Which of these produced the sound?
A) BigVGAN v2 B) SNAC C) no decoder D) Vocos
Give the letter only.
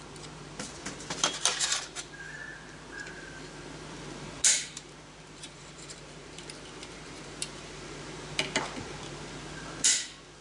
A